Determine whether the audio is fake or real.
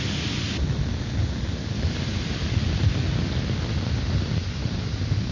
real